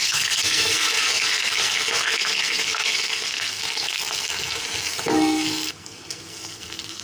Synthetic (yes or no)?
yes